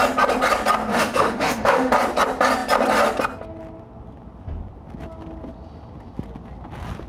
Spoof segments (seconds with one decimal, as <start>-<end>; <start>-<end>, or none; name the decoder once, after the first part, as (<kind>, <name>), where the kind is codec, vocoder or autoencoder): 0.9-1.9 (autoencoder, DAC-VAE)